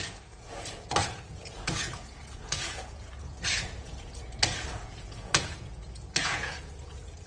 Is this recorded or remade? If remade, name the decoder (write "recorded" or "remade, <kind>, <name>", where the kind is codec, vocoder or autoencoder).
remade, vocoder, Vocos